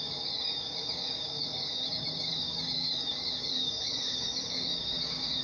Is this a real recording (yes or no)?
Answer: no